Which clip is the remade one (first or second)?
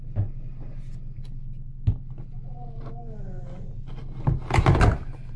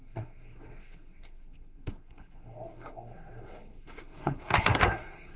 second